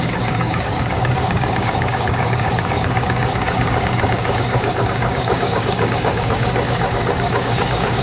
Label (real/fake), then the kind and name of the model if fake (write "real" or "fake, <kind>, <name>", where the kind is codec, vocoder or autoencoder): fake, codec, DAC